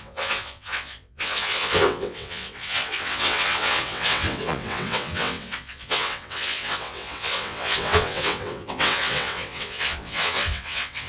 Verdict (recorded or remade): remade